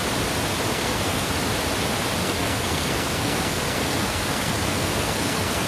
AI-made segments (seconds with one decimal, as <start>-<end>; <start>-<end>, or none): 0.7-1.3; 2.2-5.7